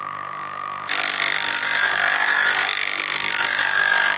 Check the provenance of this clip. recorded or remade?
remade